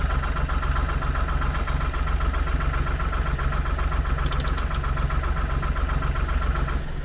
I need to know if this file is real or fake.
real